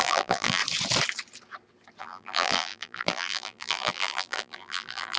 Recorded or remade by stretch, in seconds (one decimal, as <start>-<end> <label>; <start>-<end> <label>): 0.0-0.6 remade; 0.6-2.0 recorded; 2.0-5.2 remade